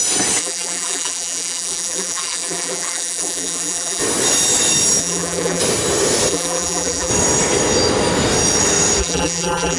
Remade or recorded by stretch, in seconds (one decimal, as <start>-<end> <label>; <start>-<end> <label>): 0.0-0.4 recorded; 0.4-4.0 remade; 4.0-5.0 recorded; 5.0-5.6 remade; 5.6-6.3 recorded; 6.3-7.1 remade; 7.1-9.0 recorded; 9.0-9.8 remade